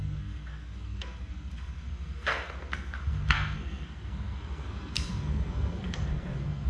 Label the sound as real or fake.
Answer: fake